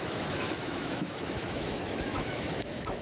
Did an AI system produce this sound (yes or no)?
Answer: yes